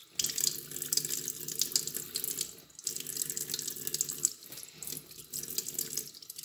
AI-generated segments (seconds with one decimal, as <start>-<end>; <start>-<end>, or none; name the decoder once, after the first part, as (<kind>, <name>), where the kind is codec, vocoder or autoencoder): none